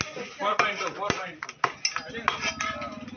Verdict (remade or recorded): recorded